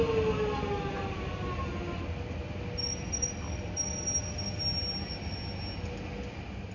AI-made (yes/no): no